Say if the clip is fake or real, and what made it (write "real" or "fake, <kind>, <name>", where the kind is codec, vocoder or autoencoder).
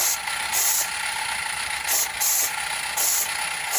real